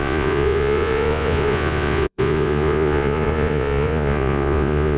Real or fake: fake